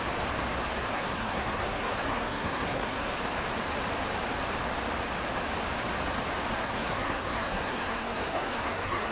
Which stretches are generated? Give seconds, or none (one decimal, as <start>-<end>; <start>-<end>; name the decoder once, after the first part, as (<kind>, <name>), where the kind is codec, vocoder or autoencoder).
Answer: 0.9-3.1 (codec, SNAC); 6.6-9.1